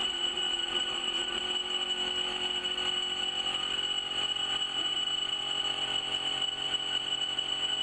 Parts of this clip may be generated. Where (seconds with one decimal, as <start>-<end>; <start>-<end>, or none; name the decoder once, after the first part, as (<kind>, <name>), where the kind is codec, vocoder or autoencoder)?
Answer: 0.0-1.4 (vocoder, Vocos)